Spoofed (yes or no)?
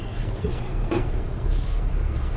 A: yes